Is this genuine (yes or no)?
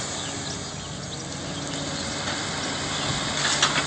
yes